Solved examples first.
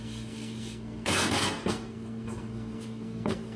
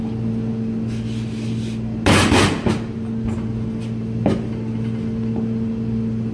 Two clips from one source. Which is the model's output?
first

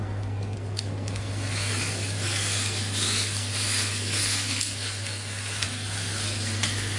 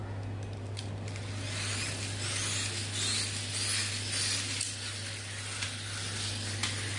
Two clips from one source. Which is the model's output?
first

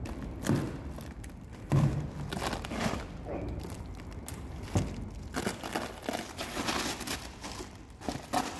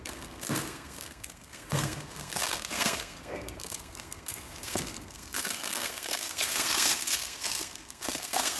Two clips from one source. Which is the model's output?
second